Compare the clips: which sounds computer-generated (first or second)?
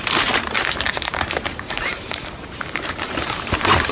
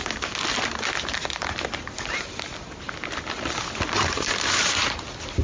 first